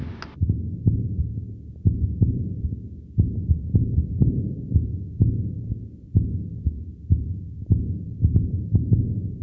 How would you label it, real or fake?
real